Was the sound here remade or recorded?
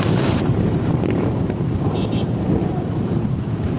remade